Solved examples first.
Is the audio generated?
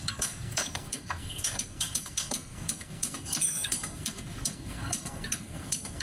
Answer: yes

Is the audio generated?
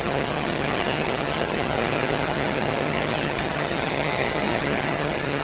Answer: yes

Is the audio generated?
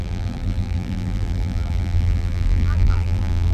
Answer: yes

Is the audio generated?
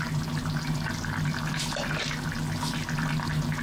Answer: no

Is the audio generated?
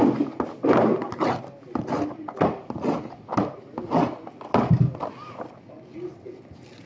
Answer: no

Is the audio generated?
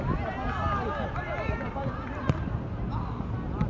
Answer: no